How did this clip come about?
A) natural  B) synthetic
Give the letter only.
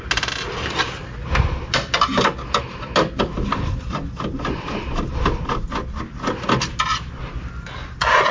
A